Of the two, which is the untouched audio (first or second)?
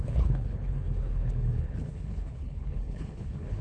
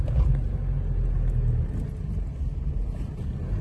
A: second